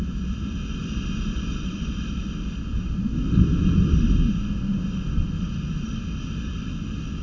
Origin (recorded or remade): recorded